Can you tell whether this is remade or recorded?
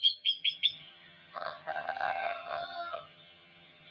remade